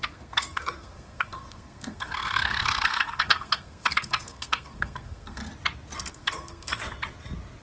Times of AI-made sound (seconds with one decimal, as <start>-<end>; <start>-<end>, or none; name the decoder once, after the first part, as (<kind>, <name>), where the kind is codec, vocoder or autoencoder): 0.0-5.4 (codec, SNAC); 6.1-6.8